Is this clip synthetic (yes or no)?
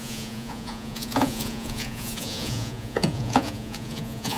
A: yes